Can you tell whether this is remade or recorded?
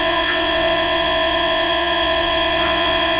remade